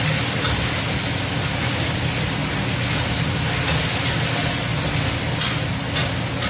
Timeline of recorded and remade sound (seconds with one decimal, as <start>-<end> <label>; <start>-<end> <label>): 0.0-6.5 recorded